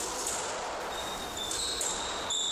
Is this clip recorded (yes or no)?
yes